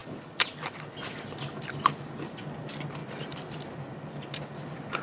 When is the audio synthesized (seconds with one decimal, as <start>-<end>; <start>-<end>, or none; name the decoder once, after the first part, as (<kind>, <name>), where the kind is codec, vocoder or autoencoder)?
none